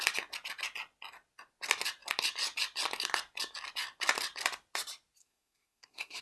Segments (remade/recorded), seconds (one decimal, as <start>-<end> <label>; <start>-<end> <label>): 0.0-5.2 recorded; 5.2-6.2 remade